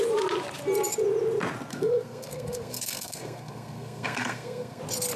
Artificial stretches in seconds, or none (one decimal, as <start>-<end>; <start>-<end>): 1.7-4.8